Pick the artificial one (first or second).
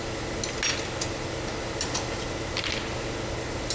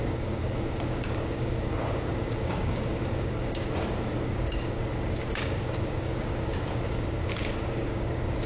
second